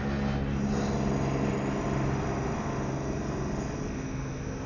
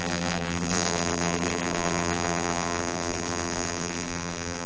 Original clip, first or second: first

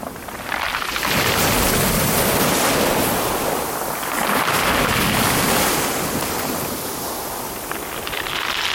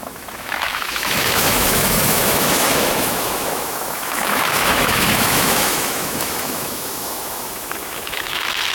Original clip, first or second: first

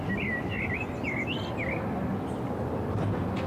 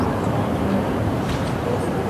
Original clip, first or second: first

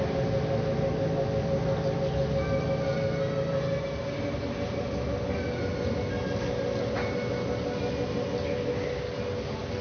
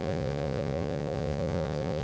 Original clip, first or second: first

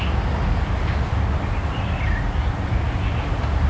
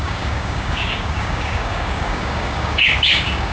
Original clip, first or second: first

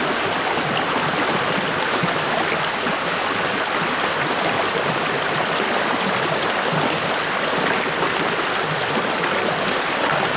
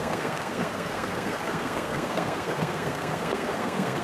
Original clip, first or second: first